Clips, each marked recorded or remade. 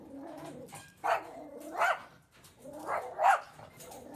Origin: recorded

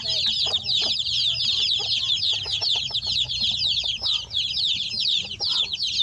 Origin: recorded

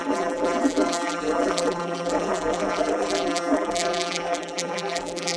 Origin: remade